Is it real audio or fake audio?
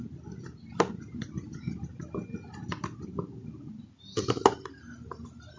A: real